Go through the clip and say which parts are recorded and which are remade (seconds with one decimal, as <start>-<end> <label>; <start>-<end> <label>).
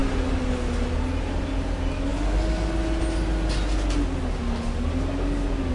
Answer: 0.0-5.7 recorded